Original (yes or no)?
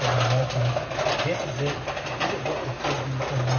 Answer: yes